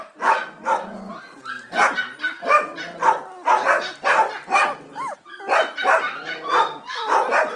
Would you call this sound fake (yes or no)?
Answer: no